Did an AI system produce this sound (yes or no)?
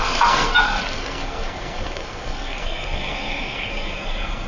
yes